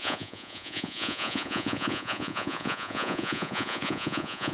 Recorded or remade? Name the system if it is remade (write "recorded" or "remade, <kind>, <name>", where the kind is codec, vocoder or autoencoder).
remade, vocoder, Vocos